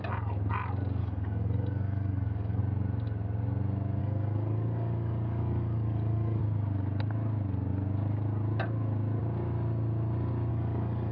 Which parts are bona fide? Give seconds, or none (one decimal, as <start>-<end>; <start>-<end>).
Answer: 0.0-1.0; 2.6-4.0; 6.4-10.5